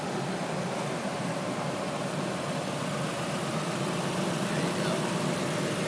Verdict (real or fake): real